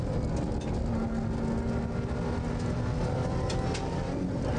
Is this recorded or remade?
recorded